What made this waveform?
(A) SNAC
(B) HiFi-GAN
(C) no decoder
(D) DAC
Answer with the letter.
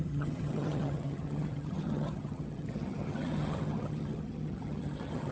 B